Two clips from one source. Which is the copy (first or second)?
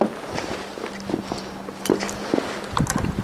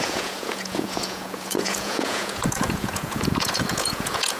second